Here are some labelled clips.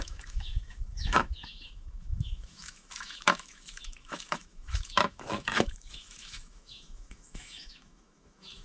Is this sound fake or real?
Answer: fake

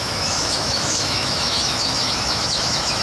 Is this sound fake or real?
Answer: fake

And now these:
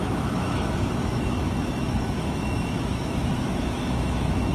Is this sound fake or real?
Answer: fake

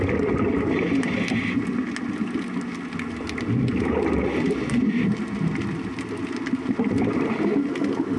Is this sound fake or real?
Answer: real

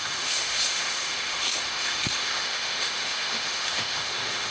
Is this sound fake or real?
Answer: fake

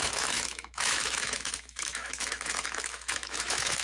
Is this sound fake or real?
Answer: fake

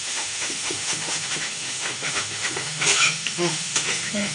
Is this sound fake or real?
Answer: fake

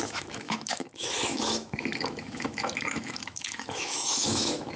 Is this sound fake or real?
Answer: fake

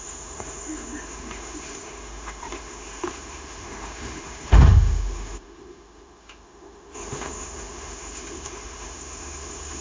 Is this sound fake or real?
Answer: fake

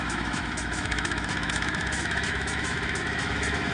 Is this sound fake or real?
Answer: fake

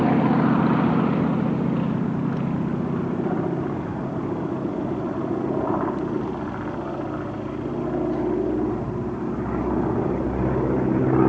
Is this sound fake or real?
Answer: real